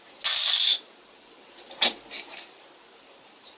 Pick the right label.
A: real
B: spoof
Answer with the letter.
A